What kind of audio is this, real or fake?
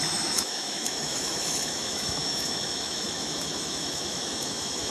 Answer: fake